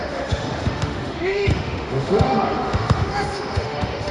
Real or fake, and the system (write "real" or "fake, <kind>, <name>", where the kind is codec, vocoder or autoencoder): fake, autoencoder, DAC-VAE